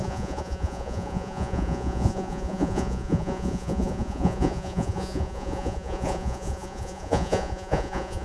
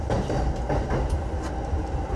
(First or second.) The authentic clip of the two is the second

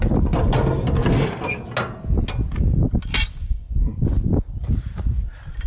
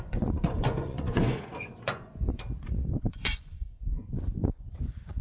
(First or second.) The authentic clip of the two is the first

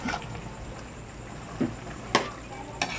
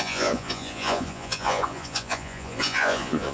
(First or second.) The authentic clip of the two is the first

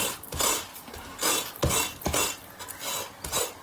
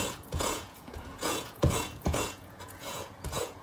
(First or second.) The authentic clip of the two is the first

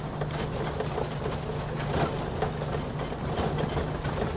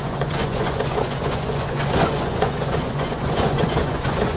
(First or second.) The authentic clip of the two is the first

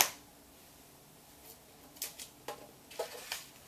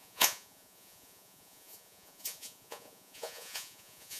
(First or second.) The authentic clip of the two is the first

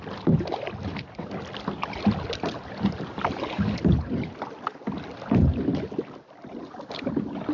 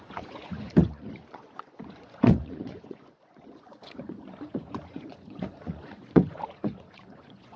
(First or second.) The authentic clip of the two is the first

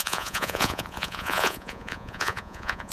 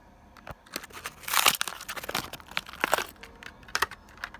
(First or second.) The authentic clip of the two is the second